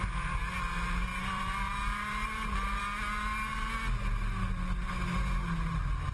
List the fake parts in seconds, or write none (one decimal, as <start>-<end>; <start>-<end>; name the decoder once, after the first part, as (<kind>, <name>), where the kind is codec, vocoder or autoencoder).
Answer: 1.1-2.8 (vocoder, BigVGAN v2)